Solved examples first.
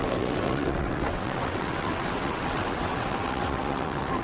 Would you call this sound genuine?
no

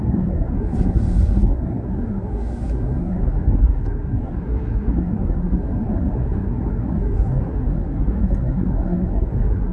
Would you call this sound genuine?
no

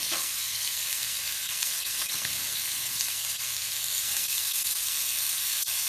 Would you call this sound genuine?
no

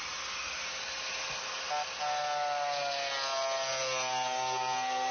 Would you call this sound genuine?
yes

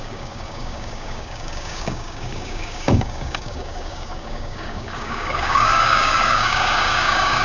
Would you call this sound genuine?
no